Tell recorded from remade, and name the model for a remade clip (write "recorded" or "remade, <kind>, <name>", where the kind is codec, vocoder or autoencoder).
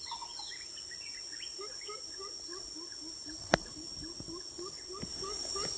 recorded